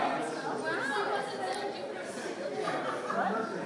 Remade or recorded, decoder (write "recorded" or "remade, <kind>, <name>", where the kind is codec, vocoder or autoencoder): recorded